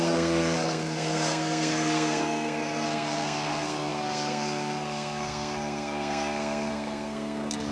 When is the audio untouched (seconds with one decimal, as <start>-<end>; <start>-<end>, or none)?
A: none